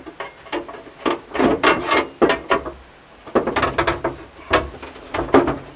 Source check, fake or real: real